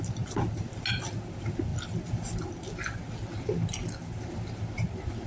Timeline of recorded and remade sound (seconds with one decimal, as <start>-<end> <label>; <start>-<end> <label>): 0.0-5.3 recorded